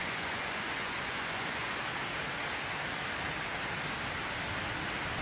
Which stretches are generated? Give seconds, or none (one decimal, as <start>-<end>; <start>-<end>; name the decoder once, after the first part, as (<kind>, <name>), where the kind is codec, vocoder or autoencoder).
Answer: 0.0-1.8 (vocoder, Vocos)